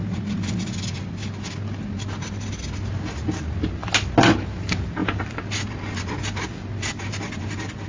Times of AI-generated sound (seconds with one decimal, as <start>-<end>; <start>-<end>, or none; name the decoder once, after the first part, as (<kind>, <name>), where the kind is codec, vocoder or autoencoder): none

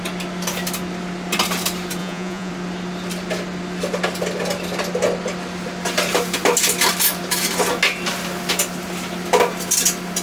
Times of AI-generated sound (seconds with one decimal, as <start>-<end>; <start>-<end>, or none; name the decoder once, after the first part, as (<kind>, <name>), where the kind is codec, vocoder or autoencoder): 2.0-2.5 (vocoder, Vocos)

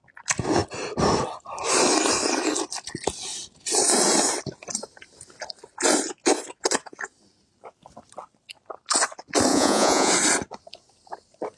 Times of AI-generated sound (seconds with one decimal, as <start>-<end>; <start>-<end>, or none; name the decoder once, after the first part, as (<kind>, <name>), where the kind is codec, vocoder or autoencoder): 9.5-10.1 (vocoder, Vocos)

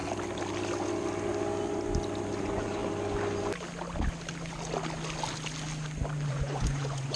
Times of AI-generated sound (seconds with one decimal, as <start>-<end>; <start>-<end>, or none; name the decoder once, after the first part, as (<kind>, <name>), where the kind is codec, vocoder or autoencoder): 2.4-2.8 (vocoder, Vocos); 6.3-7.2